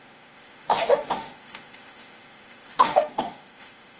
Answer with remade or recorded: remade